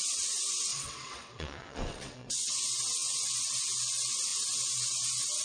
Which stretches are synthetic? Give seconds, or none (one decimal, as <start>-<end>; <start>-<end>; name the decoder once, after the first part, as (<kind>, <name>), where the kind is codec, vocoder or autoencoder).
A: 0.7-2.6 (vocoder, WaveNeXt)